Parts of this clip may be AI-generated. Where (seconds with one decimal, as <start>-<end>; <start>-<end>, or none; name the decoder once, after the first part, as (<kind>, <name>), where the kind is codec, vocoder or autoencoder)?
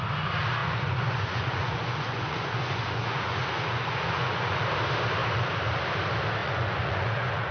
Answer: 0.6-4.6 (vocoder, Vocos); 6.4-7.5